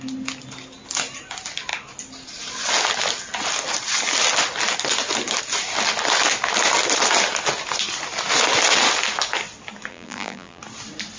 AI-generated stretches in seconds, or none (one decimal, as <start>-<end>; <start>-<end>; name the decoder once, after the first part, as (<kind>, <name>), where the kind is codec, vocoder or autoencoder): 9.9-10.6 (vocoder, BigVGAN v2)